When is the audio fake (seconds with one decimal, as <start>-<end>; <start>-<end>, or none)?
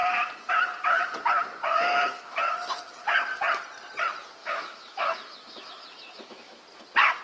4.4-6.6